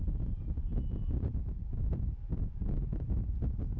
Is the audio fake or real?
real